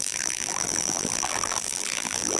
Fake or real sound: fake